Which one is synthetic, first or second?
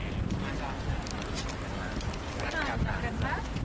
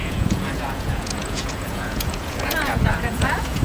second